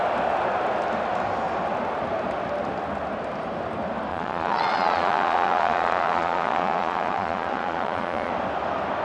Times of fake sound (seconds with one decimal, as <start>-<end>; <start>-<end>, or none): 4.1-8.3